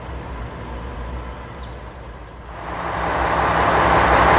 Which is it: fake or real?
real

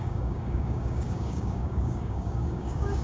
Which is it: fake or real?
fake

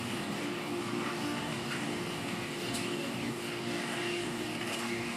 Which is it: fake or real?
fake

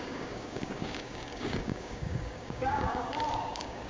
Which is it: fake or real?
fake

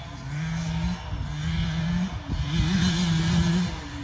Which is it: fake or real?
real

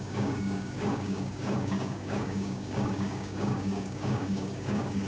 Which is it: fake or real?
fake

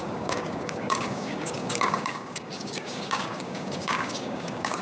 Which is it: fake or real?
fake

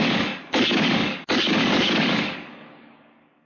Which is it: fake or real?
fake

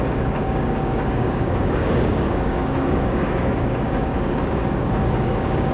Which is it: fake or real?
fake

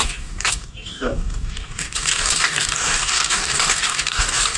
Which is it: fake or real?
fake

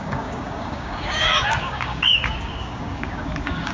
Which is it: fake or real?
fake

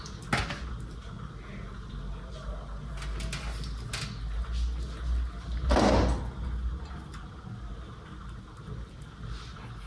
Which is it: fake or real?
real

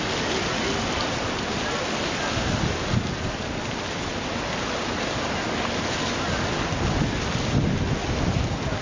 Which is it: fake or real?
real